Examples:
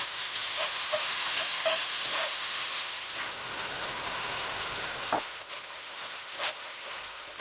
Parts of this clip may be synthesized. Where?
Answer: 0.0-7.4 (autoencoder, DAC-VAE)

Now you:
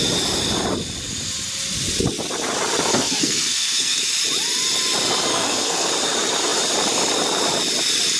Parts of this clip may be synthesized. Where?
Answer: 2.9-4.0 (codec, SNAC); 5.3-5.9